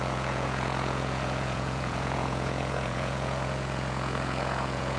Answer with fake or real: fake